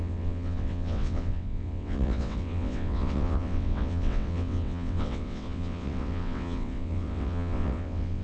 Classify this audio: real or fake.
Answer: fake